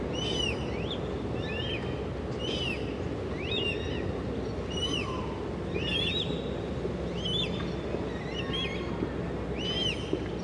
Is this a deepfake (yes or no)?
no